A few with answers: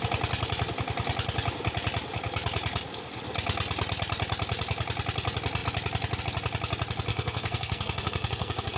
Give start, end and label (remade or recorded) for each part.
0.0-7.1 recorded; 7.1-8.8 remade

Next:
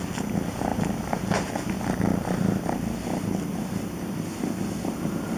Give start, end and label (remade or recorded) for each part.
0.0-2.1 recorded; 2.1-5.4 remade

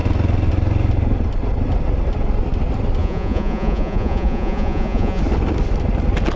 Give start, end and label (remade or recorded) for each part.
0.0-3.0 recorded; 3.0-5.2 remade; 5.2-6.4 recorded